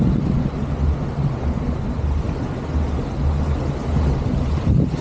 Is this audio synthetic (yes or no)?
no